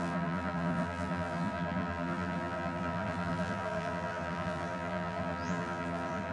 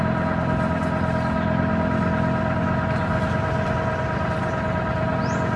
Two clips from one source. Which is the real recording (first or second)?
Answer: second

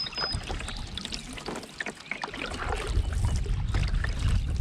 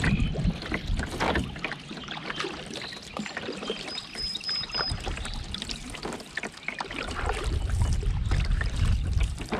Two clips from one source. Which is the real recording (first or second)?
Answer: first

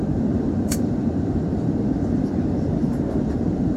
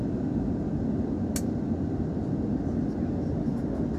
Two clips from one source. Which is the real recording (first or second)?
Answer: second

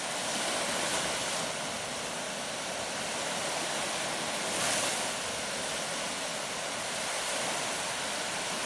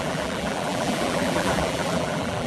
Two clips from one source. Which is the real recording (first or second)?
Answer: first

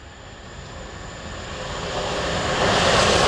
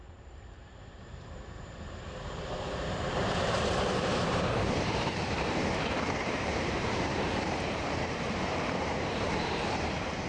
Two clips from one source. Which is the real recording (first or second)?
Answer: first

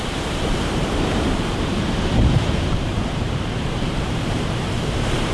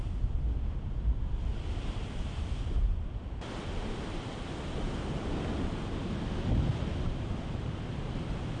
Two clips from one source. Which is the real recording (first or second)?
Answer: second